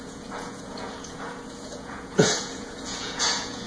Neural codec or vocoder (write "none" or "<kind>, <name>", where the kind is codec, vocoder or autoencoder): vocoder, Vocos